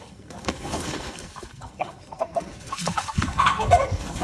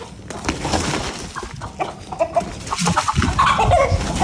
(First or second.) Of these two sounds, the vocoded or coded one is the first